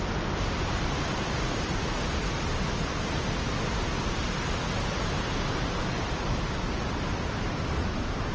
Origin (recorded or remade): recorded